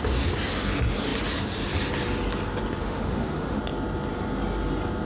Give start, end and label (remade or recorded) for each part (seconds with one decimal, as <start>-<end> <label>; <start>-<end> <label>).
0.0-2.8 recorded; 2.8-3.6 remade; 3.6-5.0 recorded